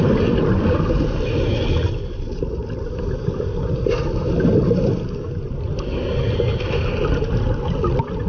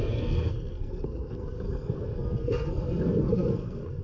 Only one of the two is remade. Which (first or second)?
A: second